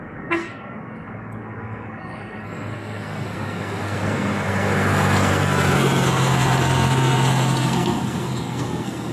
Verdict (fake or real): fake